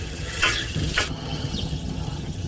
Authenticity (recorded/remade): remade